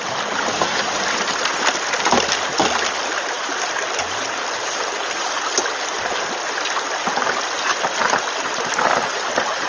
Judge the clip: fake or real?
real